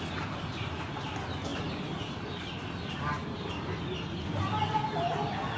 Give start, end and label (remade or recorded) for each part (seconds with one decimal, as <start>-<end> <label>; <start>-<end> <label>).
0.0-5.6 recorded